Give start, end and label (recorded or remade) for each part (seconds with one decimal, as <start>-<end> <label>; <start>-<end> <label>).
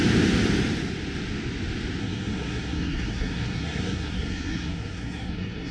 0.0-2.0 recorded; 2.0-5.7 remade